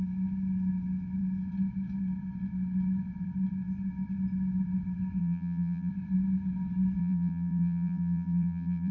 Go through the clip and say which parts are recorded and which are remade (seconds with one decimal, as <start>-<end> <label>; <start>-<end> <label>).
0.0-5.2 recorded; 5.2-5.9 remade; 5.9-7.0 recorded; 7.0-8.9 remade

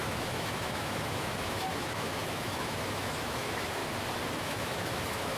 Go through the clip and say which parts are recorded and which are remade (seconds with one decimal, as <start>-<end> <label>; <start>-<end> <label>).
0.0-3.8 remade; 3.8-4.4 recorded; 4.4-5.4 remade

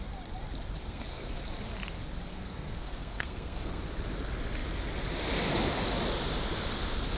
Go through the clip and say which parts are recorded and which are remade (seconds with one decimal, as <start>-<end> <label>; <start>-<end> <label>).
0.0-0.8 recorded; 0.8-1.4 remade; 1.4-2.3 recorded; 2.3-3.8 remade; 3.8-7.2 recorded

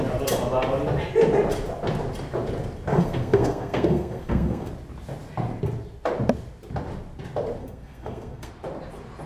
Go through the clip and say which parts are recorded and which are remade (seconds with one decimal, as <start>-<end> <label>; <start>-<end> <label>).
0.0-2.9 recorded; 2.9-4.7 remade; 4.7-7.6 recorded; 7.6-8.5 remade; 8.5-9.3 recorded

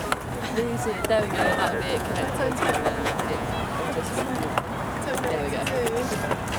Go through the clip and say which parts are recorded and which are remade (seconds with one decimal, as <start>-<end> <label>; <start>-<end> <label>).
0.0-1.7 recorded; 1.7-2.3 remade; 2.3-2.8 recorded; 2.8-3.5 remade; 3.5-6.6 recorded

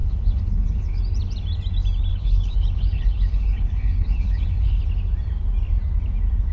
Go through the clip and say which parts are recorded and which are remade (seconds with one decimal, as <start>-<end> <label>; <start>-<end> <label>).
0.0-1.0 remade; 1.0-2.1 recorded; 2.1-4.8 remade; 4.8-6.5 recorded

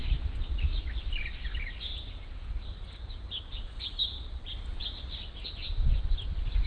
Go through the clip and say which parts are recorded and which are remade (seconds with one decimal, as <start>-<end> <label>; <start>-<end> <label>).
0.0-0.8 remade; 0.8-6.7 recorded

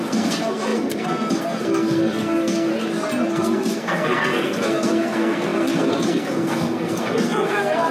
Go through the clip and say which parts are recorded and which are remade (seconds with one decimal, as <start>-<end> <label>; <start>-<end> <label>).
0.0-2.7 remade; 2.7-3.3 recorded; 3.3-7.9 remade